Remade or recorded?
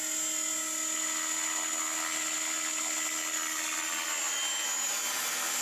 recorded